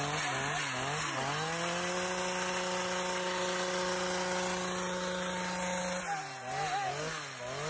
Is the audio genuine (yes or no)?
yes